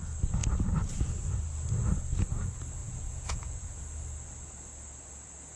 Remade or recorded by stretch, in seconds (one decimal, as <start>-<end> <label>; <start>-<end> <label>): 0.0-2.8 recorded; 2.8-3.8 remade; 3.8-5.6 recorded